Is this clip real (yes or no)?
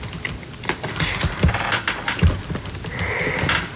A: yes